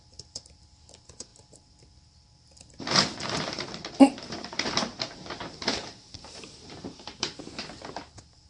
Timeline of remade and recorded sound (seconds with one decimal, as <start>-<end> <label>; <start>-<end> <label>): 0.0-4.1 recorded; 4.1-7.4 remade; 7.4-8.5 recorded